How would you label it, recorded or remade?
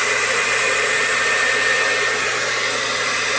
recorded